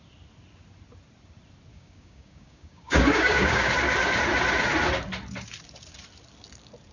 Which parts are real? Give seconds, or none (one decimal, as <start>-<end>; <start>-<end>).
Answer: 0.0-1.7; 3.7-6.9